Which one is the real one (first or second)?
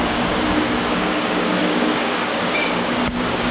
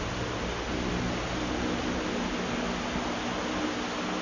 second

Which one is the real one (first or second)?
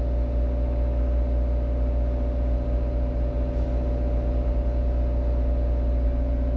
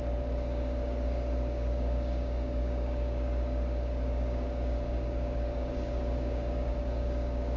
first